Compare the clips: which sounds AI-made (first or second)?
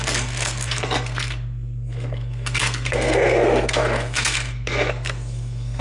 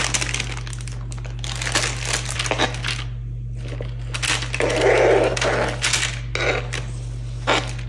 first